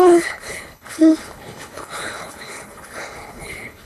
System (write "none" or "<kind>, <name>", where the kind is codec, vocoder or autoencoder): codec, HILCodec